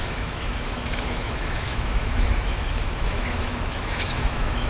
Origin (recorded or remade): remade